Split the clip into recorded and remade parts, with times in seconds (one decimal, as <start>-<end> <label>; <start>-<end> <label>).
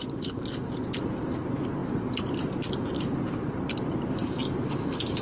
0.0-1.8 recorded; 1.8-2.4 remade; 2.4-4.2 recorded; 4.2-5.2 remade